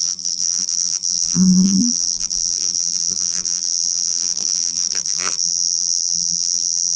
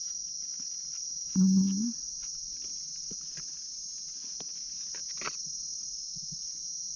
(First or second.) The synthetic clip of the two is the first